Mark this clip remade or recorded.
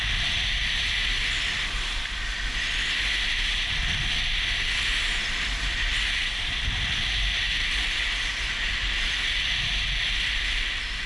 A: recorded